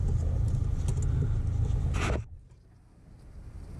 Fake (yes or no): no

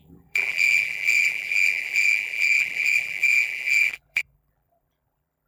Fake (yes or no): yes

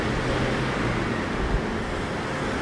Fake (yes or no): no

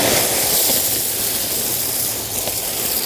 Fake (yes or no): no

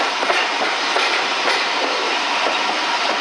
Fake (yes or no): yes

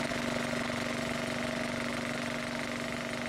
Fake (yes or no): no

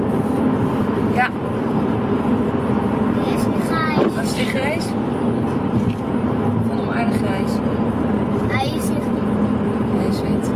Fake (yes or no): yes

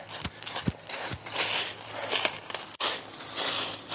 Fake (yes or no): no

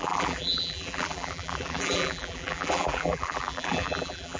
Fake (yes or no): yes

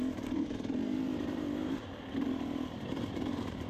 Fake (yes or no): yes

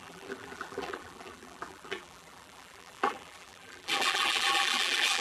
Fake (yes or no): yes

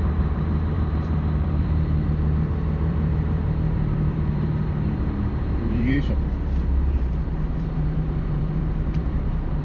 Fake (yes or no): yes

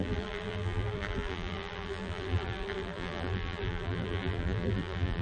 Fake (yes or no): yes